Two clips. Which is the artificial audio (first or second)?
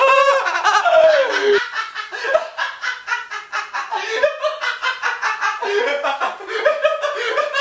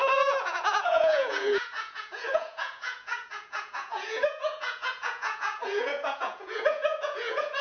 second